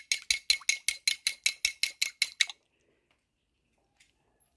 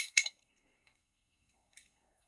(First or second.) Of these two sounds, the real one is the first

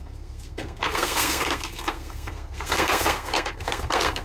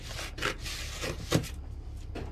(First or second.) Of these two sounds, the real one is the second